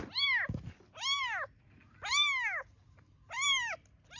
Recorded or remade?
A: recorded